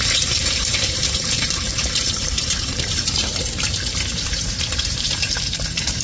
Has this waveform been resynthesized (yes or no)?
yes